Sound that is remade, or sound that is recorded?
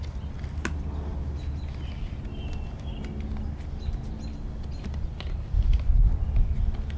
recorded